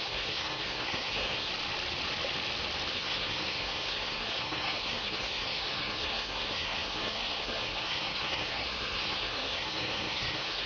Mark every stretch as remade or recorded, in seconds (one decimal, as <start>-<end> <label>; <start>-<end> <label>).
0.0-1.5 remade; 1.5-2.9 recorded; 2.9-10.7 remade